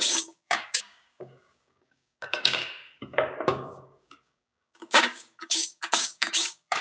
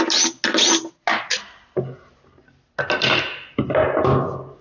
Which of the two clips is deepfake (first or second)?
first